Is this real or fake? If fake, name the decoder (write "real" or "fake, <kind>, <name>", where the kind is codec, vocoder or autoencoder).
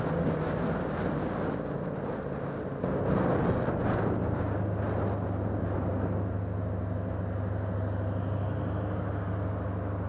real